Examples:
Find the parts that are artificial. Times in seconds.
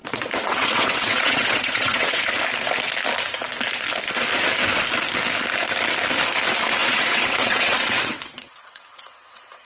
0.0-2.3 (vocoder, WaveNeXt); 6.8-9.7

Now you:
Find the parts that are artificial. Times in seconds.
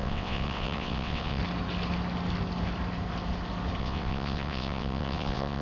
0.0-1.4 (vocoder, WaveNeXt); 3.8-5.6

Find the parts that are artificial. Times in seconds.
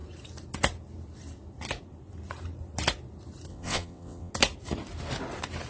3.5-4.3 (vocoder, WaveNeXt)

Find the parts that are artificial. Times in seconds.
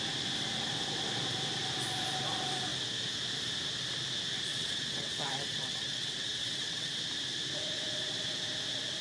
4.5-7.0 (vocoder, WaveNeXt)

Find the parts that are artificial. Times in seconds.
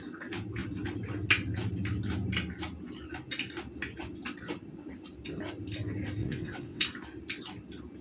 6.2-6.8 (vocoder, WaveNeXt)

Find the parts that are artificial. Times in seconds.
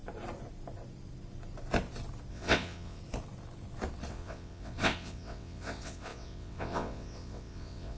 2.3-3.0 (vocoder, WaveNeXt); 4.1-8.0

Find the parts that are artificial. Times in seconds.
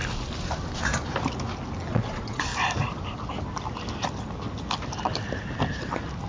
1.9-2.5 (vocoder, WaveNeXt)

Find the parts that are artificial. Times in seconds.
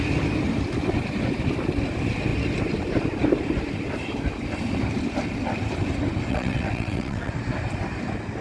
6.3-7.3 (vocoder, WaveNeXt)